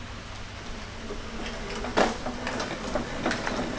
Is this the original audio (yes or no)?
yes